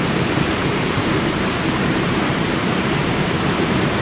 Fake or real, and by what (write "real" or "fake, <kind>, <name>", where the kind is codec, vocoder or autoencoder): fake, vocoder, BigVGAN v2